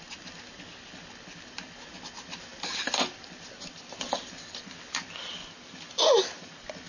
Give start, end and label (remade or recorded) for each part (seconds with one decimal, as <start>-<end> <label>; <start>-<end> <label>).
0.0-6.9 recorded